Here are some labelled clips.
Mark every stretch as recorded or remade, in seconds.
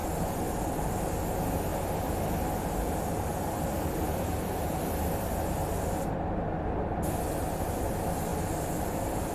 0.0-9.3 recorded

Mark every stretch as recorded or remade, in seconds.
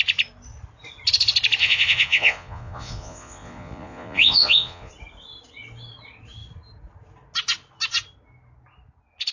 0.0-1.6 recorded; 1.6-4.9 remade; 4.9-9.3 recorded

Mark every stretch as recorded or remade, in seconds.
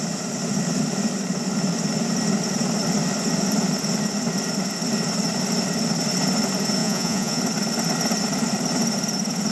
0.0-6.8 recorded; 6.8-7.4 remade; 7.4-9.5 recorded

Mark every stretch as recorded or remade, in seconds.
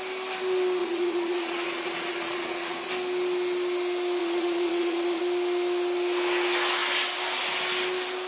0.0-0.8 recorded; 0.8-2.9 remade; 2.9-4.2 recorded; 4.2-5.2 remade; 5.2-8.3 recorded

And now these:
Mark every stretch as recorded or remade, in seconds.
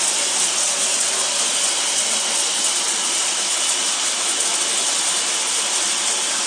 0.0-6.5 recorded